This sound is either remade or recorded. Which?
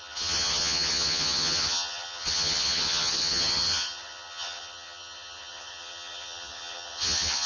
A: remade